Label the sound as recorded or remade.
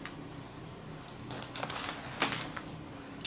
recorded